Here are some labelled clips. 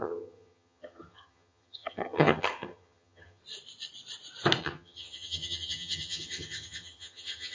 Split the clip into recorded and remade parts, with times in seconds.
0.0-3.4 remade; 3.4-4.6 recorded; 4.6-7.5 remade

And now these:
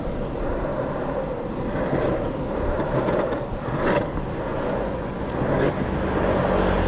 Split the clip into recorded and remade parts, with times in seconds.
0.0-4.5 recorded; 4.5-5.4 remade; 5.4-6.9 recorded

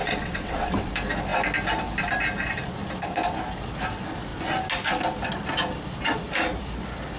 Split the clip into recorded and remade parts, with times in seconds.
0.0-0.9 remade; 0.9-7.2 recorded